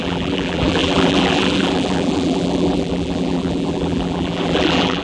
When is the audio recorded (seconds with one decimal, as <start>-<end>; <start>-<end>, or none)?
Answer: none